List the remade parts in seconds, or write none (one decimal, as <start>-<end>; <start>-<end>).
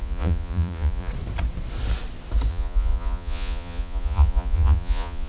0.0-1.1; 2.5-5.3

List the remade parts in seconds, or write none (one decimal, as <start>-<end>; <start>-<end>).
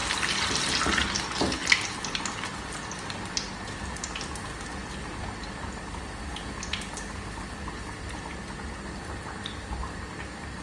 none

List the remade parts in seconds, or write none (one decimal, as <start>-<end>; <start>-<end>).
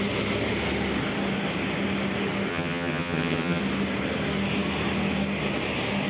2.5-3.6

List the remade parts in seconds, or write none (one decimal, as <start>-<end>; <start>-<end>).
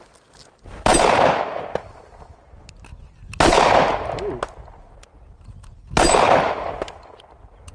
none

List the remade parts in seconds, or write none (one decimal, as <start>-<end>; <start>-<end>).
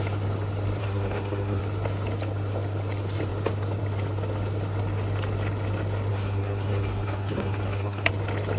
0.8-1.6; 6.1-8.1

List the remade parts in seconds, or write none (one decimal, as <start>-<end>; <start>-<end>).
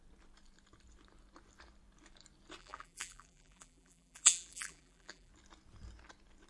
2.6-5.3